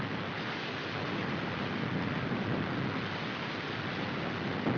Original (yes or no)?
yes